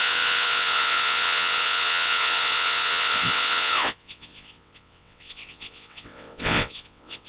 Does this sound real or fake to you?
fake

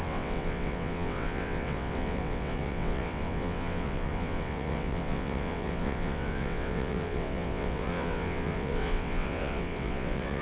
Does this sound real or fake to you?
fake